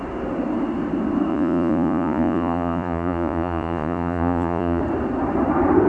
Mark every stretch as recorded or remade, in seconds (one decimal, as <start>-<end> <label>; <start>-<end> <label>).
0.0-1.3 recorded; 1.3-4.8 remade; 4.8-5.9 recorded